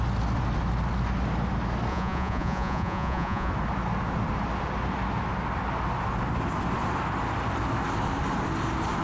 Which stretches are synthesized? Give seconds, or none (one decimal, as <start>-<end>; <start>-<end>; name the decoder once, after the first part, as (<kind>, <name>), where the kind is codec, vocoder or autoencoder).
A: 1.9-3.5 (vocoder, Vocos)